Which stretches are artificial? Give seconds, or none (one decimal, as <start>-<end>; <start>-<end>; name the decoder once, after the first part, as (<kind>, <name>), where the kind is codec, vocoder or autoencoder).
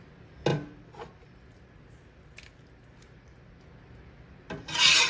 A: none